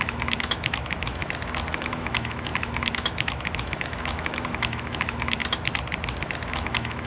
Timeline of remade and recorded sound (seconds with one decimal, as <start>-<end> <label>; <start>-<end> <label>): 0.0-1.2 remade; 1.2-1.7 recorded; 1.7-5.4 remade; 5.4-6.5 recorded; 6.5-7.1 remade